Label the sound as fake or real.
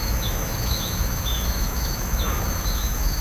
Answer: fake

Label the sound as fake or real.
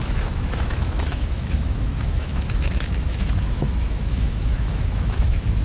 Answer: fake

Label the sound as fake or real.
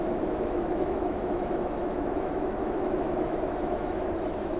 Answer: fake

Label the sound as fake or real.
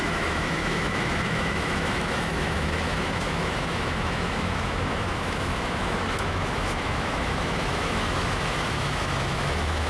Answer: fake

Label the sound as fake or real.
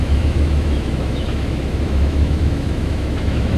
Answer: fake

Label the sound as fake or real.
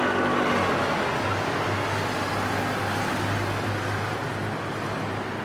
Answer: real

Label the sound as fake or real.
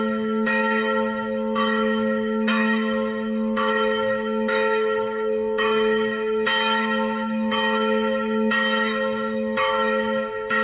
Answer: fake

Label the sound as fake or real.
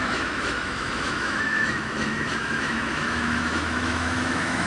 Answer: fake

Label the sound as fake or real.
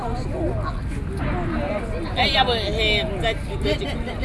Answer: real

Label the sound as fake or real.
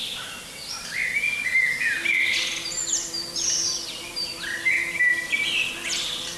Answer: real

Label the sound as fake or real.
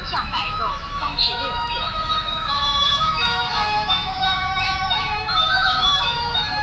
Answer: fake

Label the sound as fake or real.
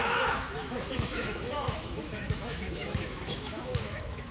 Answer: fake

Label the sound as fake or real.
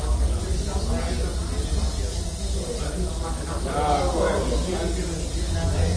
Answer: real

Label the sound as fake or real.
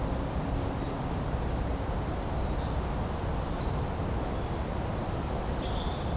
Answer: real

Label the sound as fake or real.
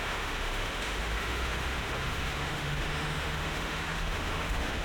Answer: fake